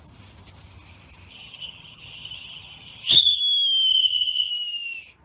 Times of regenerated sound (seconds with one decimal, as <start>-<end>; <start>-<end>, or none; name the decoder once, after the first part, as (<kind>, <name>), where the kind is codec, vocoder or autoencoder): 1.3-3.4 (vocoder, HiFi-GAN); 3.9-4.5